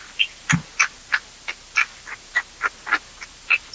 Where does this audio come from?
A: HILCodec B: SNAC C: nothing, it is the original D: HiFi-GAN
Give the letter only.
C